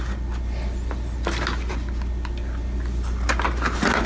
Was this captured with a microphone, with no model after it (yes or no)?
yes